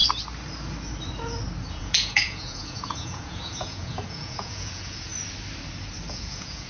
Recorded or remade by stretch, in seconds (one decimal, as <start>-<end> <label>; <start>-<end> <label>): 0.0-1.7 recorded; 1.7-5.1 remade; 5.1-6.1 recorded; 6.1-6.7 remade